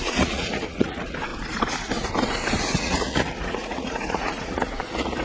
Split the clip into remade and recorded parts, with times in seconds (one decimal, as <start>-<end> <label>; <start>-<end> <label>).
0.0-1.3 remade; 1.3-2.6 recorded; 2.6-5.2 remade